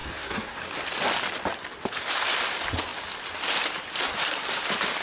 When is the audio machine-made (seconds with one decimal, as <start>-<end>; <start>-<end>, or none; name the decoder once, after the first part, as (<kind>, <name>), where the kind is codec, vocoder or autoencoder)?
0.0-0.6 (codec, SNAC)